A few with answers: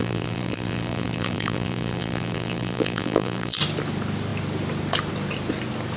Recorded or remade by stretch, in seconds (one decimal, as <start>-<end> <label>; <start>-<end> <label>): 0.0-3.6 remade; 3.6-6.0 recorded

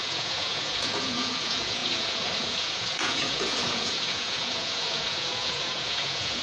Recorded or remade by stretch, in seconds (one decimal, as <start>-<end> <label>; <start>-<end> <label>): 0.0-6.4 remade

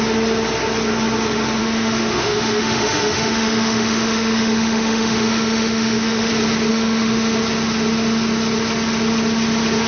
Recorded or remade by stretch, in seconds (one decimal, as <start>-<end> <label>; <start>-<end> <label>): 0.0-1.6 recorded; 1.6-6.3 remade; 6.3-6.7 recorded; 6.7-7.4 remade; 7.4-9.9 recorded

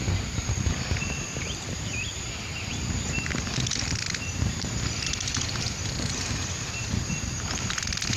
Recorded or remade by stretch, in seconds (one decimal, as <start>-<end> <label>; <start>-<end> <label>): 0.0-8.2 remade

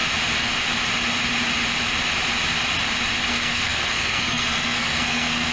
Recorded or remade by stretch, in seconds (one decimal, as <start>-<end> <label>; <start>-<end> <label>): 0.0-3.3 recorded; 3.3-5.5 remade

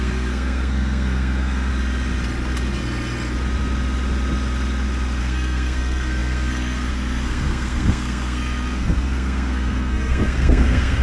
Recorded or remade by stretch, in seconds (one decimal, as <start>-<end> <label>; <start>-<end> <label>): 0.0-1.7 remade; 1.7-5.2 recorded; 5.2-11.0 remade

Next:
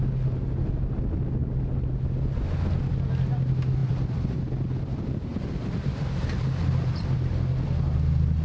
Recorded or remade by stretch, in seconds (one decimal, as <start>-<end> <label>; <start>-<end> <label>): 0.0-3.8 recorded; 3.8-4.4 remade; 4.4-5.3 recorded; 5.3-7.5 remade; 7.5-8.4 recorded